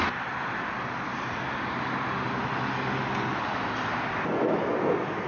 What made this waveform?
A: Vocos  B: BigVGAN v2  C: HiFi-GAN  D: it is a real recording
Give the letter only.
D